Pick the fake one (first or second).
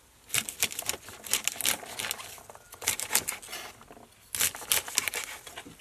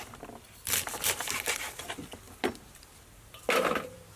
second